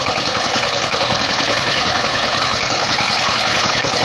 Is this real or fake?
fake